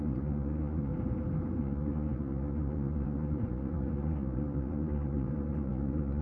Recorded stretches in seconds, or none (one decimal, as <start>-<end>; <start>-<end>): 0.9-1.6